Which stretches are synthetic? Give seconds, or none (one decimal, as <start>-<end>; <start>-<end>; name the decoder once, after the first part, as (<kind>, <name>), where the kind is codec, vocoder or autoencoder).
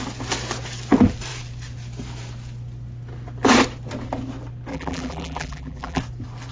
4.7-6.0 (vocoder, BigVGAN v2)